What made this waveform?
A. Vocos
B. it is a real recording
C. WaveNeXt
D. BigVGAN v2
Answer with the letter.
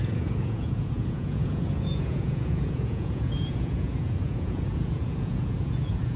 A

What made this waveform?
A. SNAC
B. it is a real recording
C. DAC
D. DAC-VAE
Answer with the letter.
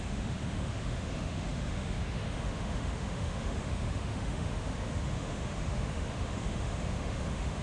D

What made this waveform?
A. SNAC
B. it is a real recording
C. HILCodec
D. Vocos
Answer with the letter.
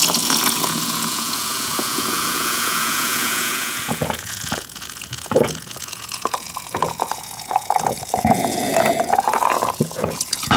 D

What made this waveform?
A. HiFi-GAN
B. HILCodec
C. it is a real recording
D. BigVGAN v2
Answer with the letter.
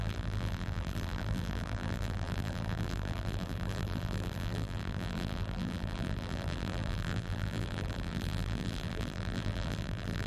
D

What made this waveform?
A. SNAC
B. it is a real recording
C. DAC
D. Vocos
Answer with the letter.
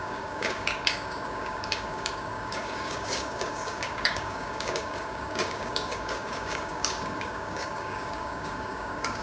C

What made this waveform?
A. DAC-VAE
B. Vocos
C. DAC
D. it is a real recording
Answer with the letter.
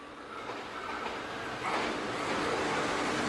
D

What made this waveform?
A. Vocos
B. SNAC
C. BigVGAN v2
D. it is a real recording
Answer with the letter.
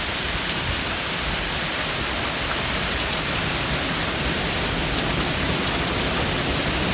C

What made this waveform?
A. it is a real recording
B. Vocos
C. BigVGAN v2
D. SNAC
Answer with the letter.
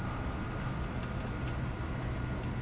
A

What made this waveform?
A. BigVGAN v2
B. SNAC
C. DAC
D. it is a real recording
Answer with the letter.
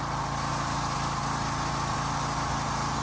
D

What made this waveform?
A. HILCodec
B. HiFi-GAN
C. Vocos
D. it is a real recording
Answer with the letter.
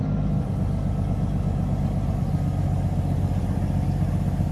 D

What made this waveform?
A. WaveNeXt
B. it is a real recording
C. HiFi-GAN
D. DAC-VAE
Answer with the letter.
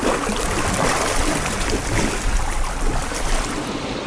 B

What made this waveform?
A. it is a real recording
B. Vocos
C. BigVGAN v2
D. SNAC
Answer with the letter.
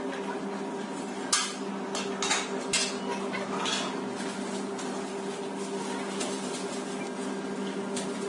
A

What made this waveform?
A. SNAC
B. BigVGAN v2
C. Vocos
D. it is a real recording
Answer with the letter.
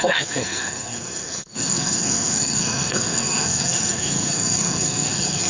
A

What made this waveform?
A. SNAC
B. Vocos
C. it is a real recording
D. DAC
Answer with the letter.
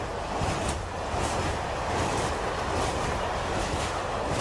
C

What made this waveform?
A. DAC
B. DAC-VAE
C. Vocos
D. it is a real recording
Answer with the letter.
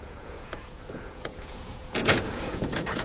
C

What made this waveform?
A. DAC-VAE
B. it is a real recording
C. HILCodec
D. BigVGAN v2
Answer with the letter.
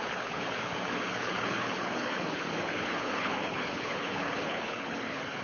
C